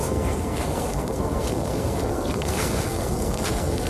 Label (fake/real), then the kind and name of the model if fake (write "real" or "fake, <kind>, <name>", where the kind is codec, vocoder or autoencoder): fake, codec, SNAC